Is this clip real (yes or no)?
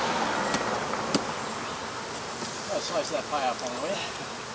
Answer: yes